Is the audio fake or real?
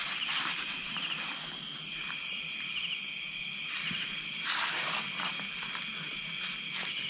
fake